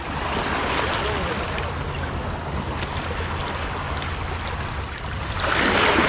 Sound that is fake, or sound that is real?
real